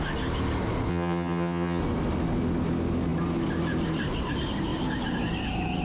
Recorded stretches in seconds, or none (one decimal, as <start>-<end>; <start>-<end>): 0.0-0.9; 1.8-5.8